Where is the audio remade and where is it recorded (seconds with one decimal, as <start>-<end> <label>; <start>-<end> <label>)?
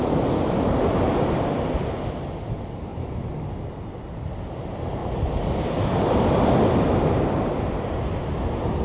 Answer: 0.0-8.8 recorded